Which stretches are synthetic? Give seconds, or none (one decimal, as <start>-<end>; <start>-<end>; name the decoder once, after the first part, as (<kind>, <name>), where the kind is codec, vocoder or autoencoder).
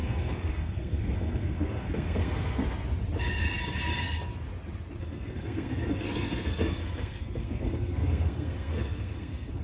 0.0-2.6 (codec, SNAC); 5.0-9.6